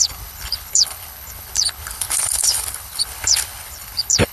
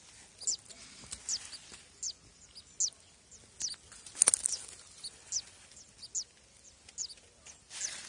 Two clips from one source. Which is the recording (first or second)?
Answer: second